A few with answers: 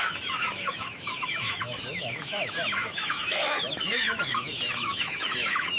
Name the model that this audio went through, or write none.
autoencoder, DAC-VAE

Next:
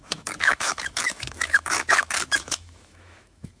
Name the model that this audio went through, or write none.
autoencoder, DAC-VAE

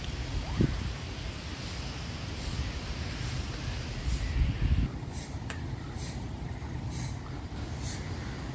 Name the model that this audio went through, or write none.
none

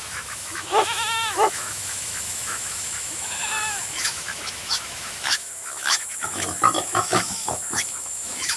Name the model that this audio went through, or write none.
autoencoder, DAC-VAE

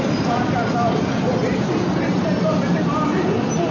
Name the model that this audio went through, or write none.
none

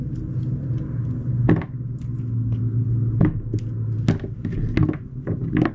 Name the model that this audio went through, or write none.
none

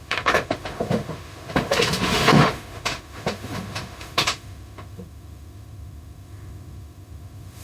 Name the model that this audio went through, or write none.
autoencoder, DAC-VAE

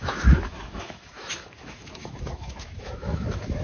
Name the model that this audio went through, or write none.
autoencoder, DAC-VAE